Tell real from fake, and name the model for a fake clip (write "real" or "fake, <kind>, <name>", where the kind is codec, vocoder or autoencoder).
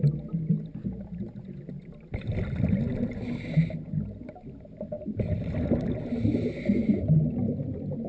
real